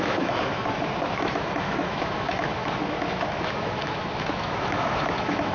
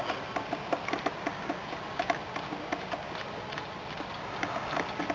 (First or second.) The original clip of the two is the second